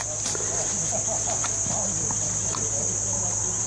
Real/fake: real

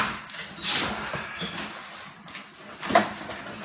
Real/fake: real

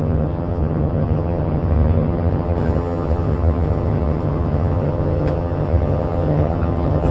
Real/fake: fake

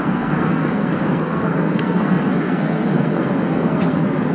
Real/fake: fake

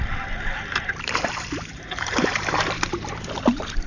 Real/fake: fake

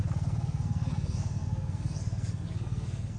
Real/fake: fake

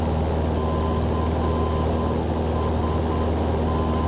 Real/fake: real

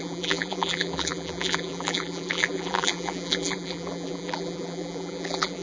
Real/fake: fake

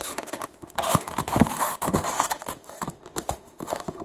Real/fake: fake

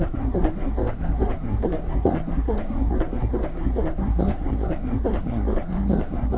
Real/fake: fake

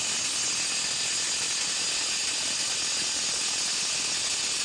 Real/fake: real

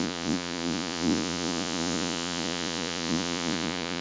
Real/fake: fake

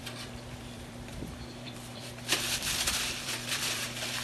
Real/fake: fake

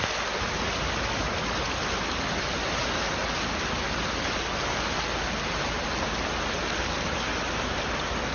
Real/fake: real